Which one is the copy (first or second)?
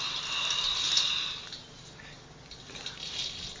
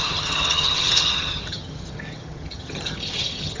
second